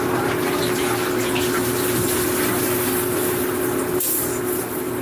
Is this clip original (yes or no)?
yes